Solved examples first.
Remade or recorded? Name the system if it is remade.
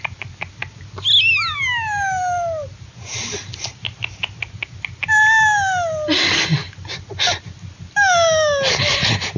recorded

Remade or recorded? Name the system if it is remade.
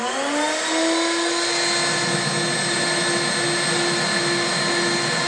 recorded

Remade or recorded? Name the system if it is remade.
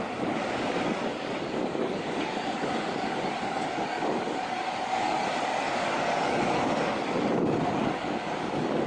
remade, codec, DAC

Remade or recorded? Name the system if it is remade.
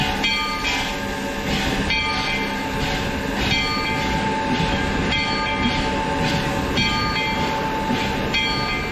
recorded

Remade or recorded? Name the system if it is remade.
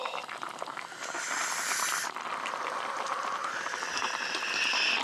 remade, vocoder, BigVGAN v2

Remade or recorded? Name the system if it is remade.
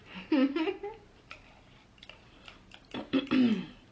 recorded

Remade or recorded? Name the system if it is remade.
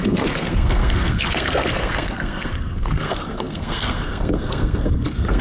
remade, codec, SNAC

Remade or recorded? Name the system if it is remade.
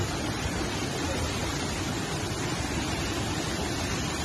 remade, vocoder, BigVGAN v2